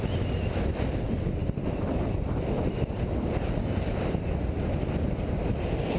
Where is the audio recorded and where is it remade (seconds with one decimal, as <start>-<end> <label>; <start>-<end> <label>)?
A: 0.0-6.0 recorded